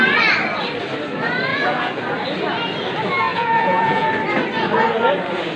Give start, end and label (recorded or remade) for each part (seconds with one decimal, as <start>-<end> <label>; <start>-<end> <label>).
0.0-1.5 recorded; 1.5-2.0 remade; 2.0-3.3 recorded; 3.3-4.1 remade; 4.1-5.6 recorded

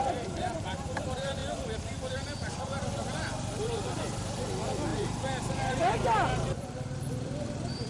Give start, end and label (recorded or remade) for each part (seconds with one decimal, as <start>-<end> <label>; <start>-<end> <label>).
0.0-7.9 remade

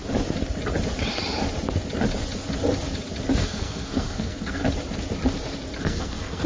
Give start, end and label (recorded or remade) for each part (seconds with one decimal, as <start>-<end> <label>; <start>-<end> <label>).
0.0-3.4 recorded; 3.4-4.6 remade; 4.6-5.8 recorded; 5.8-6.5 remade

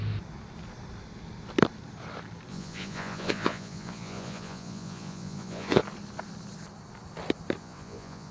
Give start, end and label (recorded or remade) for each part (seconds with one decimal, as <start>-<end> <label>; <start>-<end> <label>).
0.0-2.5 recorded; 2.5-5.8 remade; 5.8-7.6 recorded; 7.6-8.3 remade

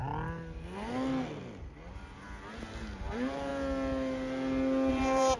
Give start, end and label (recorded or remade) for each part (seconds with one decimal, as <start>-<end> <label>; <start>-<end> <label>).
0.0-3.0 recorded; 3.0-3.5 remade; 3.5-4.9 recorded; 4.9-5.4 remade

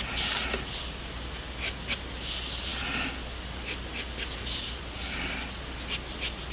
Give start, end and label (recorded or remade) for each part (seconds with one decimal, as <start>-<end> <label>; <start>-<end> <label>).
0.0-6.5 recorded

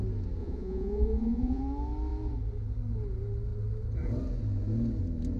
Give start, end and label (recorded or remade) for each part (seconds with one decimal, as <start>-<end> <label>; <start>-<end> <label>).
0.0-0.4 recorded; 0.4-1.6 remade; 1.6-5.4 recorded